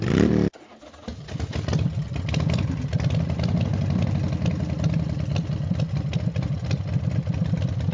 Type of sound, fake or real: real